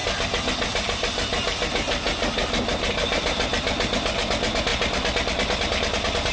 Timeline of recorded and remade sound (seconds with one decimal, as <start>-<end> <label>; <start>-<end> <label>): 0.0-6.3 recorded